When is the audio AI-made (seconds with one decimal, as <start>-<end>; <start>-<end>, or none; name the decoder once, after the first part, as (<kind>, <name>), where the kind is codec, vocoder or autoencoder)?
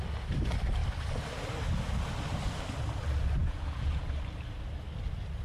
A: 3.4-4.0 (vocoder, Vocos)